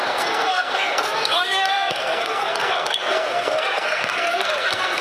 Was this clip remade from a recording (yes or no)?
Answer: yes